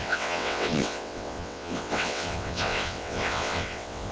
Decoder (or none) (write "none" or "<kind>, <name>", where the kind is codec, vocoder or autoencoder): vocoder, WaveNeXt